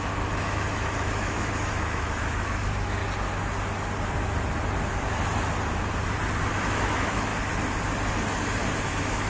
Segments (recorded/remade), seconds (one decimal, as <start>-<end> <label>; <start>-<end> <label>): 0.0-3.0 remade; 3.0-6.5 recorded; 6.5-7.3 remade; 7.3-8.8 recorded; 8.8-9.3 remade